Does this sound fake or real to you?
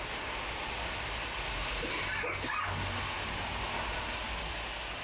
real